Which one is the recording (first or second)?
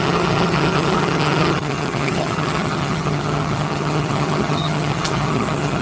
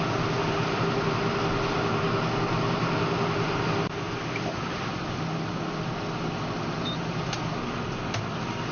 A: second